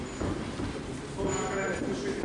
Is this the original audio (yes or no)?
yes